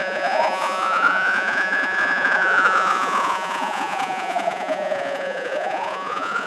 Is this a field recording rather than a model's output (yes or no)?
no